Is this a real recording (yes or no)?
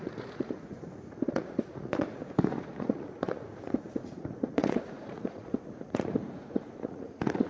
no